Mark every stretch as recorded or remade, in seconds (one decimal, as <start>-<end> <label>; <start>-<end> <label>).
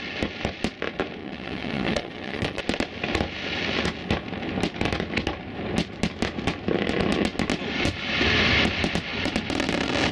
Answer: 0.0-1.2 recorded; 1.2-2.6 remade; 2.6-10.1 recorded